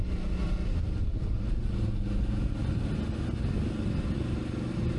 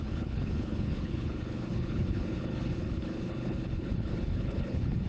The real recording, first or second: first